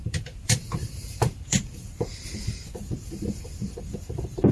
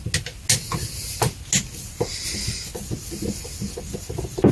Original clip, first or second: second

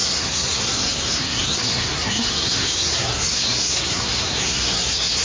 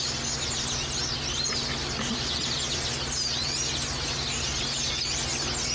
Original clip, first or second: second